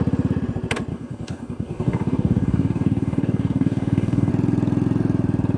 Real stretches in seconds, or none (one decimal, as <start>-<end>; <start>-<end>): 0.0-0.9; 4.3-5.6